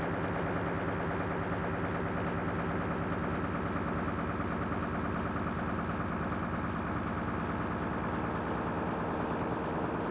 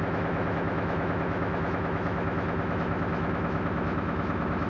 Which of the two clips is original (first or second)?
first